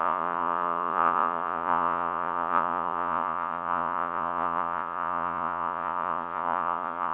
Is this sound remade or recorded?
remade